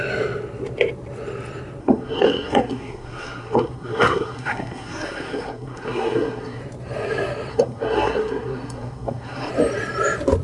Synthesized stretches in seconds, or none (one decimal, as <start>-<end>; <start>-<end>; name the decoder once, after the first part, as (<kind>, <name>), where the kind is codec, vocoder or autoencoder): 1.8-6.6 (codec, SNAC); 7.5-9.5